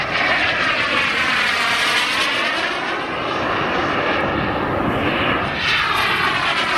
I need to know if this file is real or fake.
real